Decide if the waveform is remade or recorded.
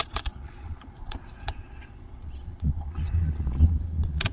remade